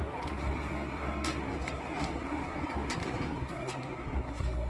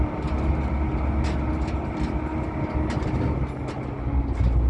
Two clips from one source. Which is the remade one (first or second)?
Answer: first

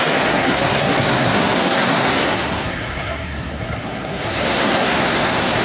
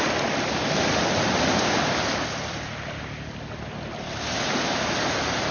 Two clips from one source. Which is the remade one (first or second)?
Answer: first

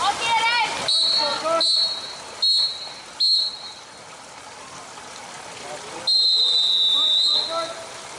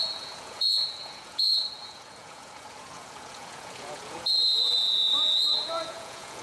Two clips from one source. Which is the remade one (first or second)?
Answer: second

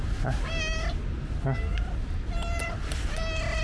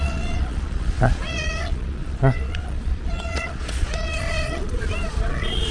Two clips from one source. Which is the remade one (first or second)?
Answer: second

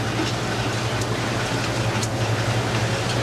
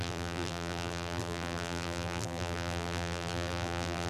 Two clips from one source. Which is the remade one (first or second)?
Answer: second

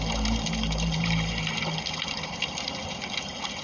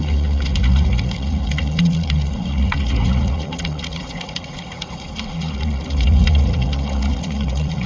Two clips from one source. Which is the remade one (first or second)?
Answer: second